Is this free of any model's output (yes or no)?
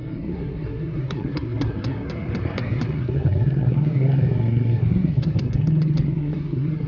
no